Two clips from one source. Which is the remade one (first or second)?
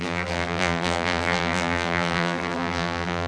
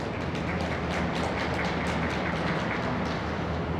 first